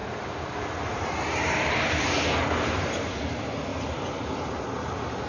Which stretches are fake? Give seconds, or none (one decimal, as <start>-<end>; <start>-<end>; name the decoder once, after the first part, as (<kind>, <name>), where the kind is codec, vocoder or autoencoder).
0.0-3.2 (vocoder, BigVGAN v2); 3.7-5.3